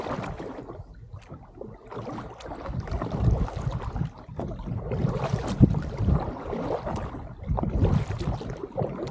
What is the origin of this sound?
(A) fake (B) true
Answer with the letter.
B